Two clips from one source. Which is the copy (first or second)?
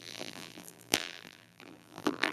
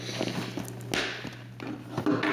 first